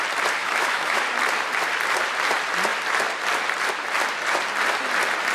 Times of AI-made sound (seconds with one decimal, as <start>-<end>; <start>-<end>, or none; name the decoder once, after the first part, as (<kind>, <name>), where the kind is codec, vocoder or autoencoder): 0.4-1.0 (autoencoder, DAC-VAE)